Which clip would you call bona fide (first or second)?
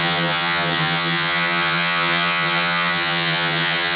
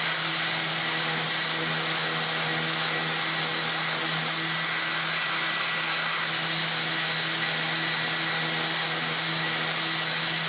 second